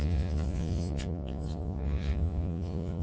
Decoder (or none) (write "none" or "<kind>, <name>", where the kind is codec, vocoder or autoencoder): vocoder, Vocos